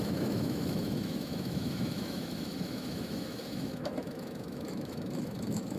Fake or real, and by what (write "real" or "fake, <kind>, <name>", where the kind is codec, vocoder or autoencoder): fake, autoencoder, DAC-VAE